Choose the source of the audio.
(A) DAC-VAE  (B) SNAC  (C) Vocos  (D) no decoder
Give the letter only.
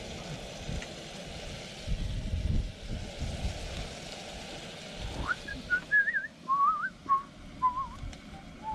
D